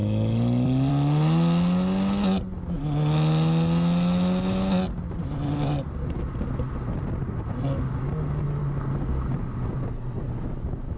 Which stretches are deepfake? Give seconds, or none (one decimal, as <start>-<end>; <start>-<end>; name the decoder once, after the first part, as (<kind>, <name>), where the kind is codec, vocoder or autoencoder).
none